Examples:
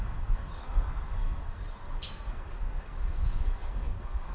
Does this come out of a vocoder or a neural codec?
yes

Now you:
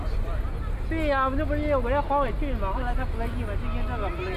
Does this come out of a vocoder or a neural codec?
no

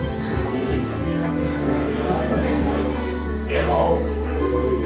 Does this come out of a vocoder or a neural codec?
yes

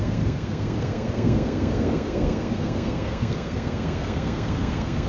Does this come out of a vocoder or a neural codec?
yes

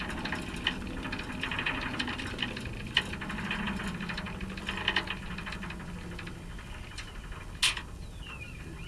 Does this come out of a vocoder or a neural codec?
no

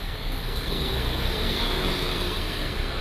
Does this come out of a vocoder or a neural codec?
yes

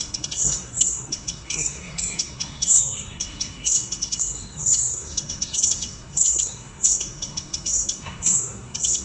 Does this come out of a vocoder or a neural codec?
yes